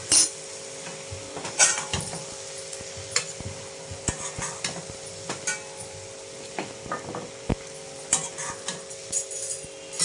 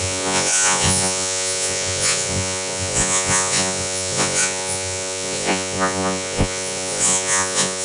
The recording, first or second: first